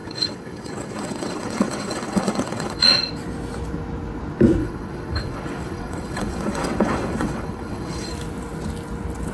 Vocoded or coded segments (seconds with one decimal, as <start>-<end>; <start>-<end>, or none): 0.0-3.1; 4.6-8.1